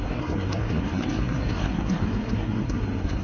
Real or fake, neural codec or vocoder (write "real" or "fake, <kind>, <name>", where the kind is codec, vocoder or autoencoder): fake, codec, SNAC